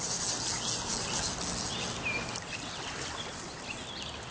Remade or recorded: recorded